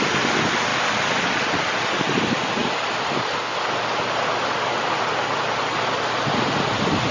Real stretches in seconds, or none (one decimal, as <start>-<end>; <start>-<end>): 0.0-7.1